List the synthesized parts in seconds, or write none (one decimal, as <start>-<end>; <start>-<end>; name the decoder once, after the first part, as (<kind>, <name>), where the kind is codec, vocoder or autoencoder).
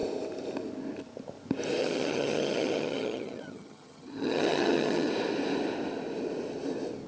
1.8-5.1 (vocoder, HiFi-GAN)